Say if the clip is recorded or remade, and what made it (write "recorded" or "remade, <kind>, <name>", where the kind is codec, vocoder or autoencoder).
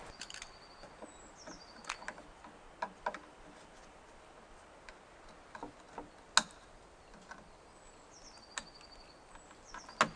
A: recorded